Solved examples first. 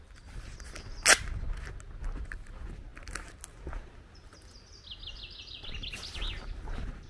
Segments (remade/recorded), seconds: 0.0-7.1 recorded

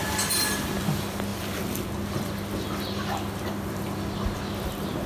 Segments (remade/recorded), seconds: 0.0-5.1 recorded

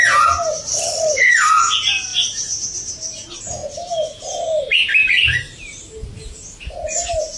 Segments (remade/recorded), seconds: 0.0-0.7 recorded; 0.7-1.3 remade; 1.3-7.4 recorded

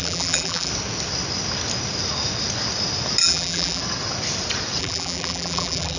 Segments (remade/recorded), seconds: 0.0-0.7 remade; 0.7-3.2 recorded; 3.2-3.8 remade; 3.8-4.8 recorded; 4.8-6.0 remade

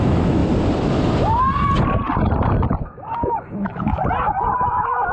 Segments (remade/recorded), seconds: 0.0-0.4 remade; 0.4-2.8 recorded; 2.8-4.0 remade; 4.0-4.6 recorded; 4.6-5.1 remade